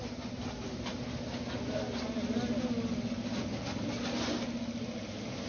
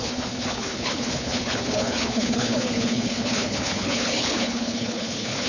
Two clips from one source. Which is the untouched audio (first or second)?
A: first